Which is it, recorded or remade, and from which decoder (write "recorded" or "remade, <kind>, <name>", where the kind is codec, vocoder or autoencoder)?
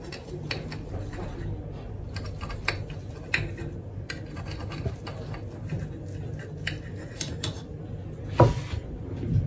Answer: recorded